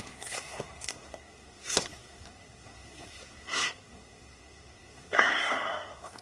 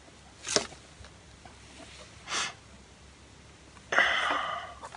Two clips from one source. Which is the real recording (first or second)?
second